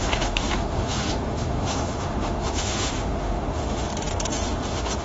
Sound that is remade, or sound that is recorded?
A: remade